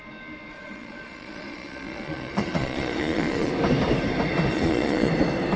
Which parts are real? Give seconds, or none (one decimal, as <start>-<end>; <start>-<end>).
0.0-0.5; 3.5-4.5; 5.1-5.6